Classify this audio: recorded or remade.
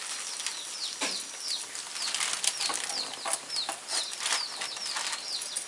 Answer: recorded